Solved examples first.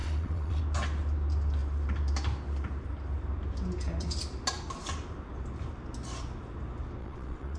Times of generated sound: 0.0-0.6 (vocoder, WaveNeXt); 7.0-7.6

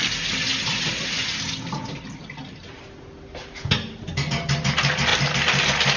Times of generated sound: none

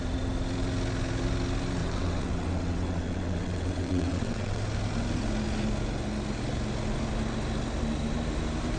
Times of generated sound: 1.8-4.6 (vocoder, WaveNeXt)